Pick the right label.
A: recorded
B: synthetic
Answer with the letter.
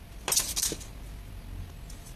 A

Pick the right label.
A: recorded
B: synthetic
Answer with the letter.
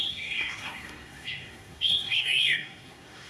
B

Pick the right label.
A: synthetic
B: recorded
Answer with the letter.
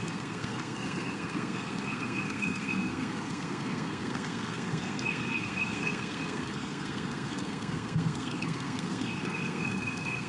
A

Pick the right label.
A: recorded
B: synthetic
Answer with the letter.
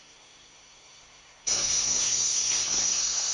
B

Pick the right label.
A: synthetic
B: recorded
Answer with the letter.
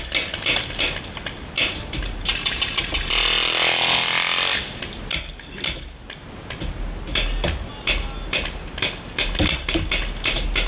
B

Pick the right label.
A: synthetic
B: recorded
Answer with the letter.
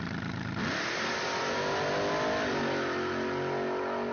B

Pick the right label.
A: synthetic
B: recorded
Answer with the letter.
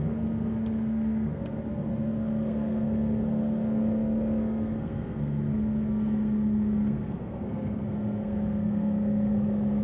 A